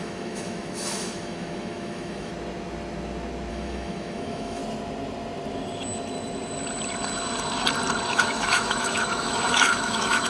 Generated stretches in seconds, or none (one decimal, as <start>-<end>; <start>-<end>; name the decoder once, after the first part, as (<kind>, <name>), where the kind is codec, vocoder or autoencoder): 0.0-2.3 (autoencoder, DAC-VAE); 3.5-4.6; 8.1-10.3